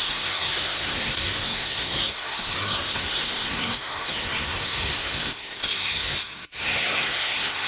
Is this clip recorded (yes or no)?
no